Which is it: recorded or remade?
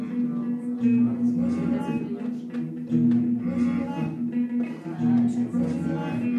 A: recorded